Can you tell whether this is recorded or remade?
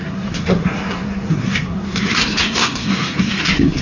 remade